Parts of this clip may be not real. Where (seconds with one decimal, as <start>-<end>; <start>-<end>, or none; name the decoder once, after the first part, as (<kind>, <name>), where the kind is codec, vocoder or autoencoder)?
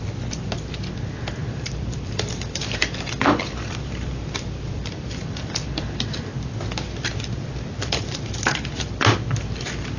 1.4-6.2 (vocoder, BigVGAN v2)